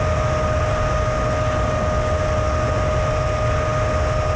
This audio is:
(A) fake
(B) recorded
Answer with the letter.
B